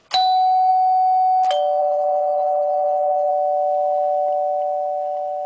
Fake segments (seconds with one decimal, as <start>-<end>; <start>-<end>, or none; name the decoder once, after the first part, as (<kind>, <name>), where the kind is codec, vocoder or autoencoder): 1.8-3.3 (codec, HILCodec)